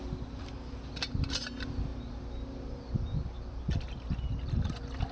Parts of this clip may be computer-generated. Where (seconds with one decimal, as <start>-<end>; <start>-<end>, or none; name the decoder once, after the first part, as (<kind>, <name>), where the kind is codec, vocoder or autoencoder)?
none